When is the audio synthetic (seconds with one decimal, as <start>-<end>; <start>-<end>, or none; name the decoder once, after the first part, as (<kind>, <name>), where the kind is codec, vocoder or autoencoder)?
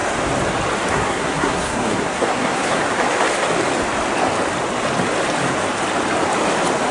0.9-2.8 (codec, SNAC)